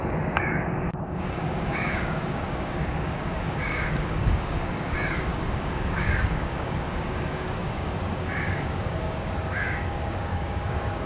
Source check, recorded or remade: remade